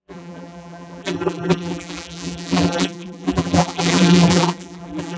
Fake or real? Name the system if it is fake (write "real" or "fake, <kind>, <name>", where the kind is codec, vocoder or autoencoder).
fake, vocoder, BigVGAN v2